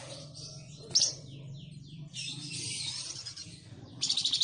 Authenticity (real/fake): real